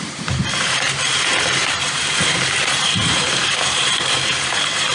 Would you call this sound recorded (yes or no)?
no